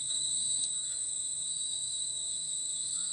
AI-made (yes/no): yes